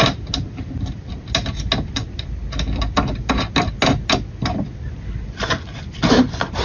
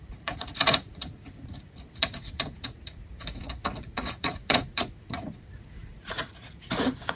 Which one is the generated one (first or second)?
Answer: second